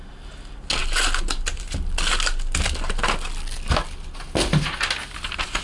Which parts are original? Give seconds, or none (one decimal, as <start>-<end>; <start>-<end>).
0.0-5.6